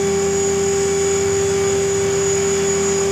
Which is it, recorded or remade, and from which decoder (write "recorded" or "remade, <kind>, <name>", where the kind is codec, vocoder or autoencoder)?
recorded